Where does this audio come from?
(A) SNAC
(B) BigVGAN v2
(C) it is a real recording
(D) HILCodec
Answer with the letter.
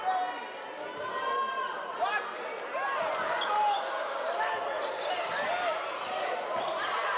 C